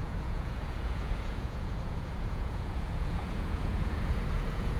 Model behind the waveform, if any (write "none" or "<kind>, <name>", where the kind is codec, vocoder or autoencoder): vocoder, Vocos